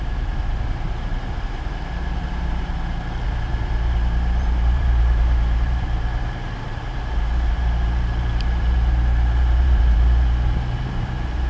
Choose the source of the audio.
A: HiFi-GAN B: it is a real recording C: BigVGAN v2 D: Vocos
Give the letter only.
C